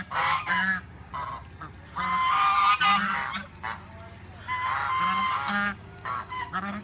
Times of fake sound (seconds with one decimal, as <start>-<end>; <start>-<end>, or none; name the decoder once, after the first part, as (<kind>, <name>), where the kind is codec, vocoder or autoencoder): 0.0-1.1 (codec, DAC); 5.2-6.8